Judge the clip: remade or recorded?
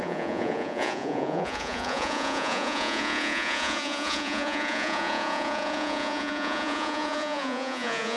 remade